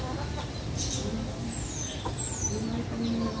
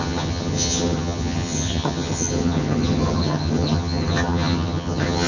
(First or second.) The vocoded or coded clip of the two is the second